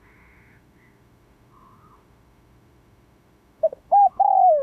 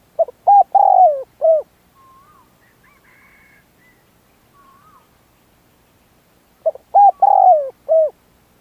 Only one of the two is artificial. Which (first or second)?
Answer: first